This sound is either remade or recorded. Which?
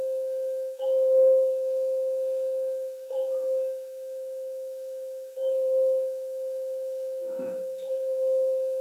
remade